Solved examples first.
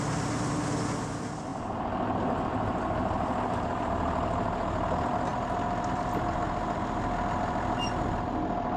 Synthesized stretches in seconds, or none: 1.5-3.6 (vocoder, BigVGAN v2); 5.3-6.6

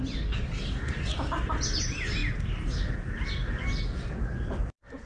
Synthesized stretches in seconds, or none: none

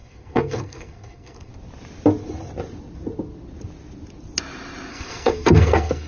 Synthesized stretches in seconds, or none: 0.0-1.5 (codec, SNAC); 4.9-6.1